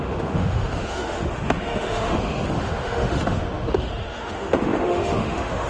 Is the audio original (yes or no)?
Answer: no